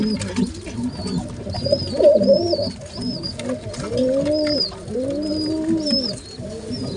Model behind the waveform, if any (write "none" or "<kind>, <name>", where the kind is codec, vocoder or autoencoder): none